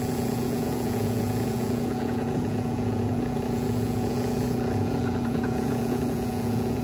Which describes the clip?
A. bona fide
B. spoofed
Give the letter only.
B